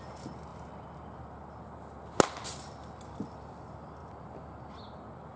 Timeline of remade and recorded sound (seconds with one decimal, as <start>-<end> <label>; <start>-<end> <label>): 0.0-5.4 recorded